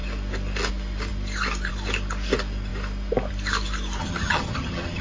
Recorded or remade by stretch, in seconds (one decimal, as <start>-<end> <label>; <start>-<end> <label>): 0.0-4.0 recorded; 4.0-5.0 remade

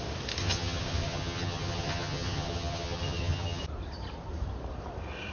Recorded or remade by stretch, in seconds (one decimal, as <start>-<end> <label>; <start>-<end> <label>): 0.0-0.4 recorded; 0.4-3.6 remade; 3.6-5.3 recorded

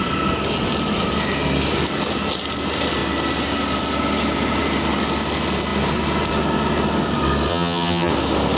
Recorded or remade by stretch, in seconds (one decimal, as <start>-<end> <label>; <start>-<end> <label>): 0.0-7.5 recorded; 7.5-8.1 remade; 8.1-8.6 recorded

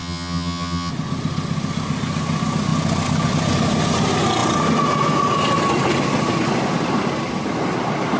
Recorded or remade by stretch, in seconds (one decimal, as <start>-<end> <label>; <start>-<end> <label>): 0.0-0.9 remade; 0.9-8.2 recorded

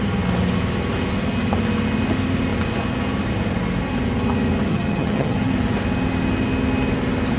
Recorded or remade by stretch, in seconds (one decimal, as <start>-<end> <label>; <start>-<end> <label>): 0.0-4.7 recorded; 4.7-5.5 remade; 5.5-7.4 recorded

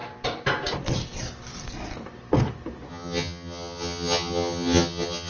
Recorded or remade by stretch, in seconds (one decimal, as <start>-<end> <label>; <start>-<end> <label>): 0.0-2.9 recorded; 2.9-5.3 remade

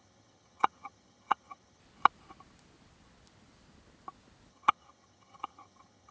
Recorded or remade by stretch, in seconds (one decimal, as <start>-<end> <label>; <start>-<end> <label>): 0.0-1.8 remade; 1.8-4.5 recorded; 4.5-6.1 remade

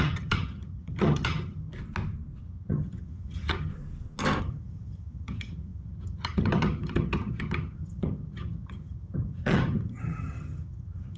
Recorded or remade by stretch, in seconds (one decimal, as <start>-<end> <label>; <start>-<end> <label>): 0.0-1.7 remade; 1.7-2.4 recorded; 2.4-3.7 remade; 3.7-4.4 recorded; 4.4-11.2 remade